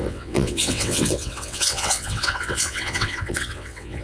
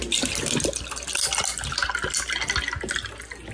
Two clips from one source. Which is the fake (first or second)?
first